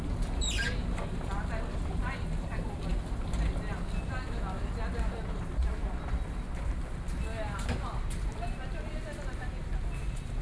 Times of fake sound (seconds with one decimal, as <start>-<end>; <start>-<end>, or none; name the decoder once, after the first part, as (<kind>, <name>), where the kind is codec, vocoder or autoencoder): none